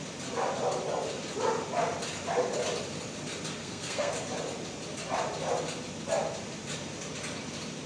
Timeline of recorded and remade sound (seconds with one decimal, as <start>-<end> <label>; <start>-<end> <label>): 0.0-3.6 recorded; 3.6-4.1 remade; 4.1-7.9 recorded